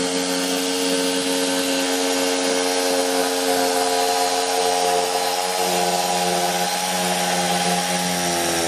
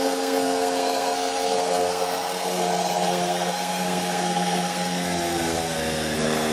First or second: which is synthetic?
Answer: second